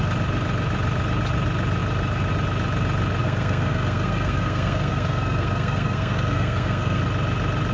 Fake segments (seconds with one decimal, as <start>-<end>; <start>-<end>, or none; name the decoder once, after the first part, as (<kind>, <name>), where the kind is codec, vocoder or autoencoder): 3.2-7.0 (codec, SNAC)